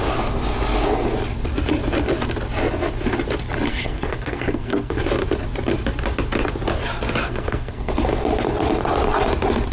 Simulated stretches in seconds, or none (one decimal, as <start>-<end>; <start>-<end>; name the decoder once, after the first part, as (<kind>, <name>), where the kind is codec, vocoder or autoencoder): 3.7-5.1 (codec, SNAC); 7.2-7.9